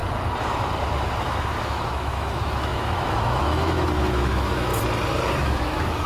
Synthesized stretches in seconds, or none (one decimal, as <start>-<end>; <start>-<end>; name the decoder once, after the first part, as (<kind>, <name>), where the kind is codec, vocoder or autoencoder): 1.2-4.7 (autoencoder, DAC-VAE); 5.4-6.1

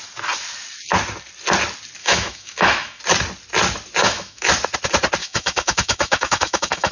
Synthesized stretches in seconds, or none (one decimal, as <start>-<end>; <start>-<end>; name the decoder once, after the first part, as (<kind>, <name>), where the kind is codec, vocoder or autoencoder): 2.0-3.0 (autoencoder, DAC-VAE); 4.0-4.5; 5.2-6.9

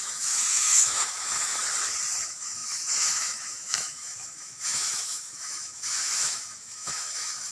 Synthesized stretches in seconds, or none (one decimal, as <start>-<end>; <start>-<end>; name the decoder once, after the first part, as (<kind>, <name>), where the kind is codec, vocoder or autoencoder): 0.0-1.6 (autoencoder, DAC-VAE); 2.2-7.5

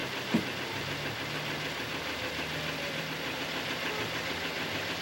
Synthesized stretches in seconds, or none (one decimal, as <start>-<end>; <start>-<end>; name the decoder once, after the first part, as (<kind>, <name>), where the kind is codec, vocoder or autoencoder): none

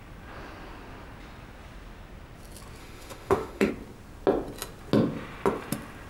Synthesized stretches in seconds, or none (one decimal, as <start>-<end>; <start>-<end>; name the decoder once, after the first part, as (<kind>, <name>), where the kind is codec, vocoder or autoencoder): 2.8-3.7 (autoencoder, DAC-VAE)

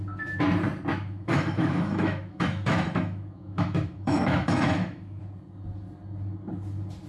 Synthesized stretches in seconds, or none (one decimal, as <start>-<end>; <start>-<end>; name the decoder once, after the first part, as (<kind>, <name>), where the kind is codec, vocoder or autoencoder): 0.9-5.2 (autoencoder, DAC-VAE)

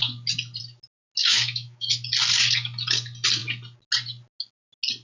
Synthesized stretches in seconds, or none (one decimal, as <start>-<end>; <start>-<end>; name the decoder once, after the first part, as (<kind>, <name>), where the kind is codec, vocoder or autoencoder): 1.2-1.9 (autoencoder, DAC-VAE)